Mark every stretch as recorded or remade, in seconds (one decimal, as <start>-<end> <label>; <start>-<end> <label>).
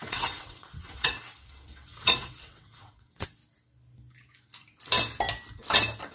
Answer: 0.0-3.4 remade; 3.4-6.1 recorded